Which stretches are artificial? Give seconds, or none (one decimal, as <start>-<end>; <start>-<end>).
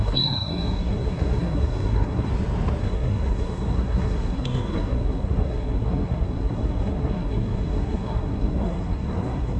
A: 0.0-2.3; 2.8-9.6